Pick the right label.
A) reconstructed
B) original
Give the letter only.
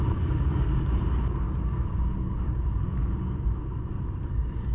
A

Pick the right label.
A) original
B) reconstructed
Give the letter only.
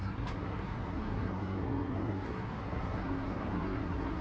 B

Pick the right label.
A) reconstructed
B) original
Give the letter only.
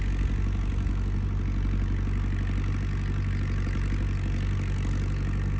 B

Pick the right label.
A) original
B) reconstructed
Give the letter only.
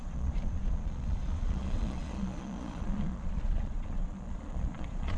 B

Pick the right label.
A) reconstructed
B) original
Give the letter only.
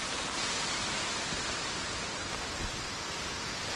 B